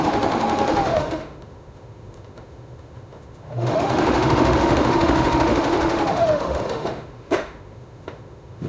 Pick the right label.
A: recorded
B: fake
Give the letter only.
B